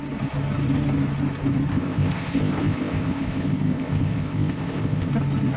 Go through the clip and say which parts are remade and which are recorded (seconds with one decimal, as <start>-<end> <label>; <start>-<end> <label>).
0.0-1.7 recorded; 1.7-5.1 remade; 5.1-5.6 recorded